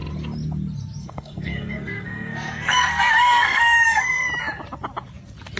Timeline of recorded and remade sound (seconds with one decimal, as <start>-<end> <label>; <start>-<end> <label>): 0.0-1.0 recorded; 1.0-4.3 remade; 4.3-5.6 recorded